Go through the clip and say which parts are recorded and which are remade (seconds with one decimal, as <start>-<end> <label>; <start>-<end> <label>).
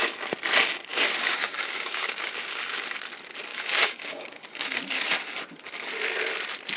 0.0-0.9 recorded; 0.9-2.8 remade; 2.8-3.5 recorded; 3.5-4.8 remade; 4.8-6.8 recorded